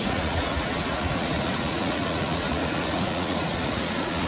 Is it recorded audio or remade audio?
remade